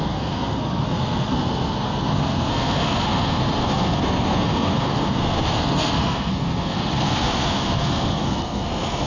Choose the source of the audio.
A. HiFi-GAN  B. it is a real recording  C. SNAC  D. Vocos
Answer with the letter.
C